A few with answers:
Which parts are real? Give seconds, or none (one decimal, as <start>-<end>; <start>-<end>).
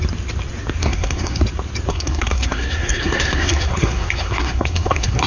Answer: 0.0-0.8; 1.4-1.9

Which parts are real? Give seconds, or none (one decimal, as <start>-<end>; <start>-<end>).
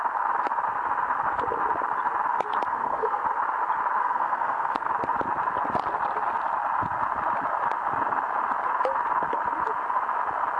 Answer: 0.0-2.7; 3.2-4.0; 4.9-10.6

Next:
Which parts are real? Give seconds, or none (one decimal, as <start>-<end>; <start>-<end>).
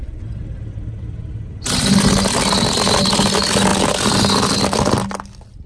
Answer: 0.0-5.7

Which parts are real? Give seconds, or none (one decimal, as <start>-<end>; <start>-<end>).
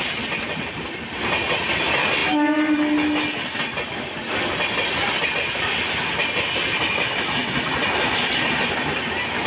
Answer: 0.0-9.5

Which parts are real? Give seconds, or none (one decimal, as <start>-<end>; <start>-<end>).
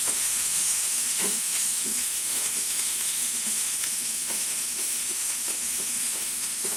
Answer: none